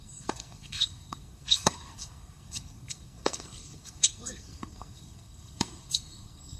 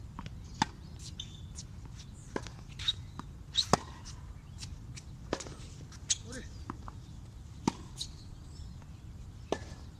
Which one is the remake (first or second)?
first